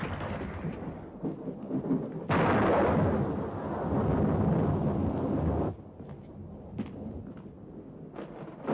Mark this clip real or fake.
real